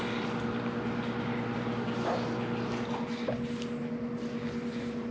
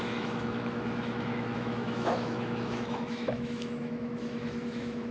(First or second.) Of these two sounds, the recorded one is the first